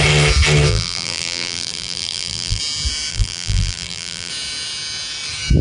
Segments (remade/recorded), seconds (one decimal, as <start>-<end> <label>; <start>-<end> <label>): 0.0-0.7 recorded; 0.7-2.6 remade; 2.6-3.1 recorded; 3.1-4.3 remade; 4.3-5.6 recorded